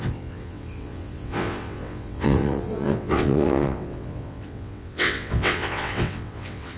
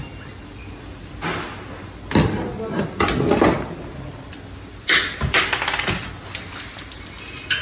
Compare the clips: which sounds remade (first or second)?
first